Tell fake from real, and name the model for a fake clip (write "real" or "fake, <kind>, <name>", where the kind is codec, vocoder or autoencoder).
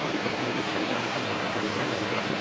fake, codec, SNAC